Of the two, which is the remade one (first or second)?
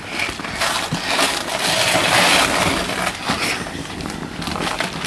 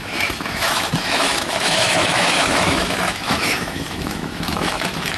second